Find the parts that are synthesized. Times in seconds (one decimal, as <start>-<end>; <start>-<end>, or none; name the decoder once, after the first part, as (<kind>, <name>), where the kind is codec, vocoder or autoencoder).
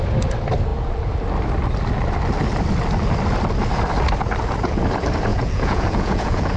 5.3-6.6 (vocoder, Vocos)